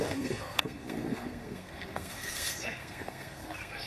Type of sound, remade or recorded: remade